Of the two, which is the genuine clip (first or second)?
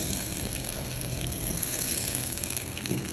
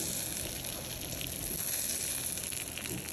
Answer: second